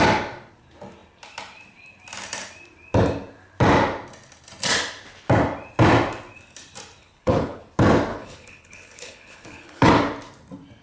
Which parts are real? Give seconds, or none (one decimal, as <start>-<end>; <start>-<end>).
0.0-7.0; 7.6-8.1; 9.9-10.8

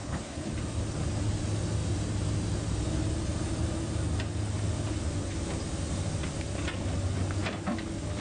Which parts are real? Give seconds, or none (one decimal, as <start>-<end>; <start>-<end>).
0.5-8.2

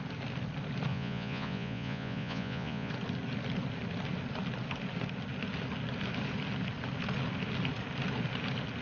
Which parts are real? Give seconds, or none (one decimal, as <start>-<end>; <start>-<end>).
0.0-0.9; 2.9-8.8

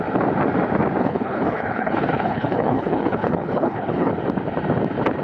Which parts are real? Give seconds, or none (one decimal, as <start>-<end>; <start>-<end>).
0.0-1.0; 4.1-5.2

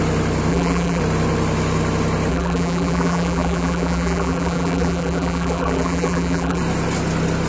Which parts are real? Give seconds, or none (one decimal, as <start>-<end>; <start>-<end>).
0.0-0.5; 1.0-2.3; 6.6-7.5

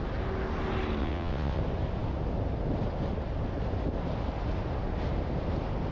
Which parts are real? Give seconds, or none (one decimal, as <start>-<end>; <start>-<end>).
0.0-1.0; 1.6-5.9